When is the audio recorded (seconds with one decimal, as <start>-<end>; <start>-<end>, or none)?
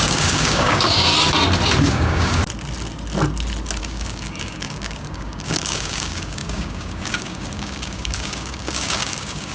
1.1-1.9; 2.4-3.8